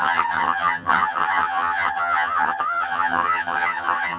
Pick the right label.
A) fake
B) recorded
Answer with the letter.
A